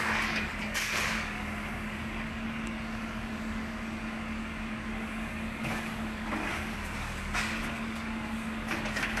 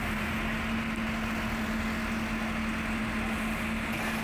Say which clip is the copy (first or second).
first